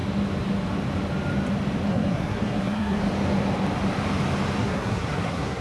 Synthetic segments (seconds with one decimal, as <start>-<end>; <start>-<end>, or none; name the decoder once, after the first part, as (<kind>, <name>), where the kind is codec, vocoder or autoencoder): 1.9-3.0 (codec, SNAC); 4.6-5.6